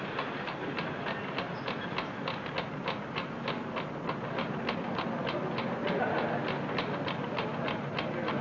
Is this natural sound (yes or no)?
yes